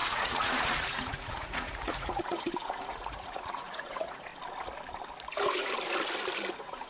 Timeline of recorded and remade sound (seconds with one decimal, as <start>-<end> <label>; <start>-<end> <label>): 0.0-4.3 remade; 4.3-6.5 recorded; 6.5-6.9 remade